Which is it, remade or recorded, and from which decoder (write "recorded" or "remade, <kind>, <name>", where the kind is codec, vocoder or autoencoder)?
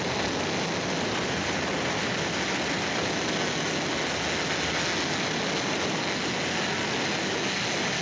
recorded